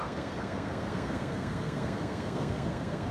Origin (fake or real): fake